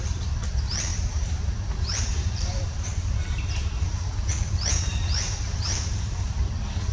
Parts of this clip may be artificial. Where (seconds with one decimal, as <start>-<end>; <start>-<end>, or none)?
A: 0.9-4.1; 4.9-6.5